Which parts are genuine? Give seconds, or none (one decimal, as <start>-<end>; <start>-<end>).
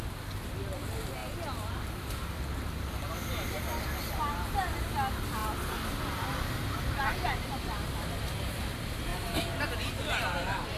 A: 0.0-10.8